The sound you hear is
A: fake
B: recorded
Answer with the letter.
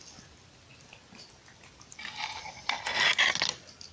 B